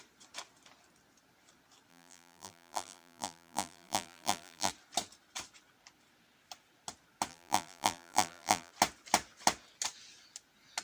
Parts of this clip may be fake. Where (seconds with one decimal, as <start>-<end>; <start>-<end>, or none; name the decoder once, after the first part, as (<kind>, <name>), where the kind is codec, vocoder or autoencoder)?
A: 1.9-4.7 (vocoder, BigVGAN v2); 7.3-8.7